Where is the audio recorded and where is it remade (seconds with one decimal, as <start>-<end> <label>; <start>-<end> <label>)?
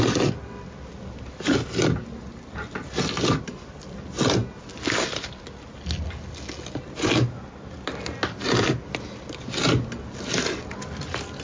0.0-11.4 recorded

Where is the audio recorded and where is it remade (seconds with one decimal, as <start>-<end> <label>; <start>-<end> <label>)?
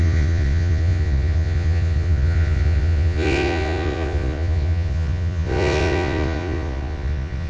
0.0-7.5 remade